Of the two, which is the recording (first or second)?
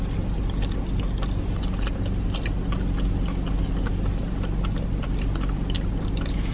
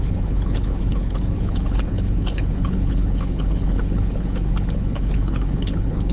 first